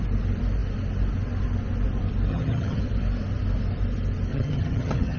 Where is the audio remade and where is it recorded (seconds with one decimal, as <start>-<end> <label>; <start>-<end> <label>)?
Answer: 0.0-2.3 recorded; 2.3-2.8 remade; 2.8-4.3 recorded; 4.3-5.2 remade